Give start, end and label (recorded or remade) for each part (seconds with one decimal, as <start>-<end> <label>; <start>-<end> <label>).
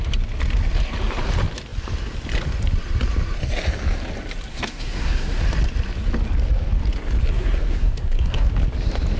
0.0-4.5 recorded; 4.5-5.4 remade; 5.4-7.2 recorded; 7.2-8.5 remade; 8.5-9.2 recorded